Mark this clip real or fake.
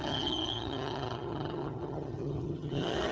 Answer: fake